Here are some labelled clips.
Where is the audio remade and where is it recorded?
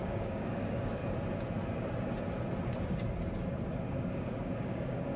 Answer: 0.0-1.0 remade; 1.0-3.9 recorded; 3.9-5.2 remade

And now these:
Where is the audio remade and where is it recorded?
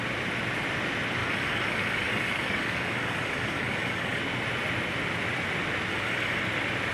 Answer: 0.0-1.2 recorded; 1.2-4.2 remade; 4.2-5.9 recorded; 5.9-6.4 remade; 6.4-6.9 recorded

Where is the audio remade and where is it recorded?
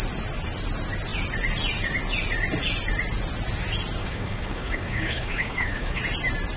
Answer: 0.0-4.0 recorded; 4.0-6.0 remade; 6.0-6.6 recorded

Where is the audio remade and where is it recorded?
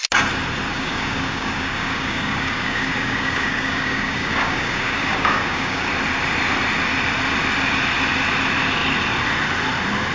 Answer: 0.0-0.7 recorded; 0.7-5.9 remade; 5.9-10.1 recorded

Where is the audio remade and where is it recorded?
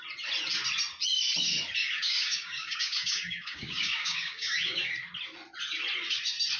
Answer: 0.0-1.8 recorded; 1.8-4.9 remade; 4.9-6.6 recorded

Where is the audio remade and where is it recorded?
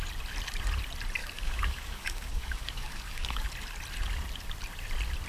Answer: 0.0-1.2 recorded; 1.2-3.5 remade; 3.5-5.3 recorded